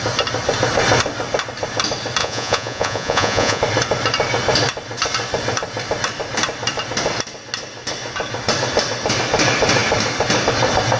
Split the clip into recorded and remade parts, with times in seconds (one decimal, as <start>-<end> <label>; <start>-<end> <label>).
0.0-2.2 recorded; 2.2-3.6 remade; 3.6-11.0 recorded